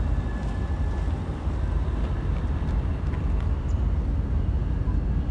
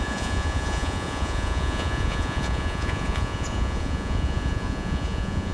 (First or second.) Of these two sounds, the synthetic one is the second